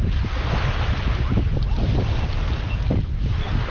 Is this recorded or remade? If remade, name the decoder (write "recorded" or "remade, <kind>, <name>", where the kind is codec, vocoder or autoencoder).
recorded